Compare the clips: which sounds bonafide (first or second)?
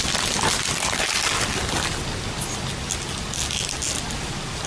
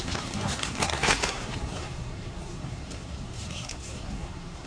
first